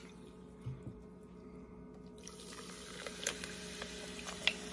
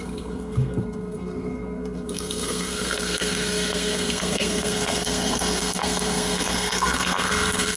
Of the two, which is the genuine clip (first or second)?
first